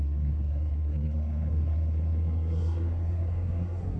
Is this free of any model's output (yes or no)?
no